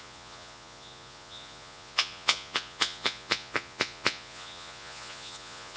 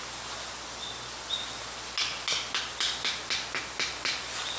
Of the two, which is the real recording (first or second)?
second